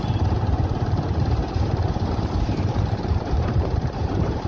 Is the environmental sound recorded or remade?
remade